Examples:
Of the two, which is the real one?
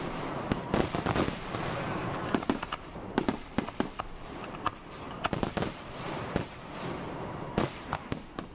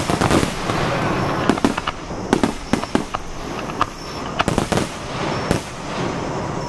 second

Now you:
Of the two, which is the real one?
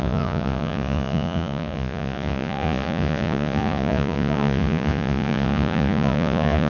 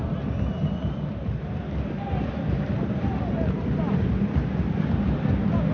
second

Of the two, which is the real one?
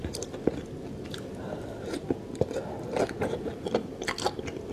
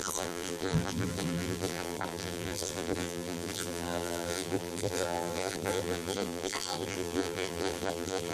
first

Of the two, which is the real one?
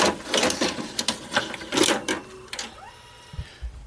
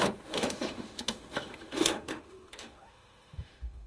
first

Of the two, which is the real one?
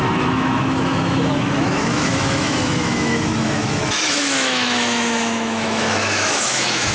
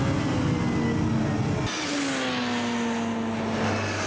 second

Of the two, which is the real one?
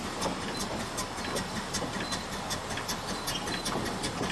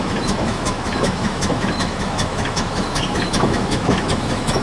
first